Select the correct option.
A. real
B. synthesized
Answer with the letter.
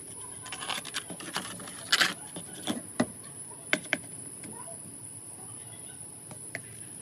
A